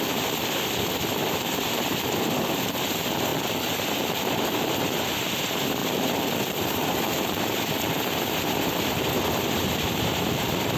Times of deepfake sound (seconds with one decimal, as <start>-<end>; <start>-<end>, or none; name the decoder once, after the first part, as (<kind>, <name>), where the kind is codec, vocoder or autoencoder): 0.0-5.8 (vocoder, BigVGAN v2); 6.4-10.8